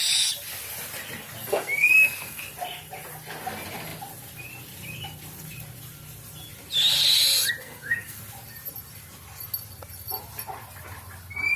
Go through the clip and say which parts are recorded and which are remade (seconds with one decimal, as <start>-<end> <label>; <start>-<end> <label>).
0.0-1.4 recorded; 1.4-2.4 remade; 2.4-7.6 recorded; 7.6-8.2 remade; 8.2-11.6 recorded